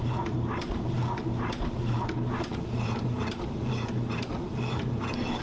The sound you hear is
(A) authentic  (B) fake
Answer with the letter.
B